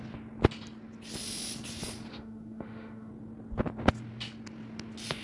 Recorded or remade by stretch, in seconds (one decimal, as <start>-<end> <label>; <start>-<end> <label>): 0.0-2.1 recorded; 2.1-3.1 remade; 3.1-5.2 recorded